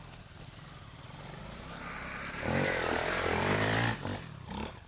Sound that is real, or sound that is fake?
real